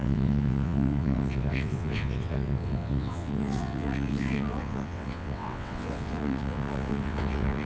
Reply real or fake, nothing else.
fake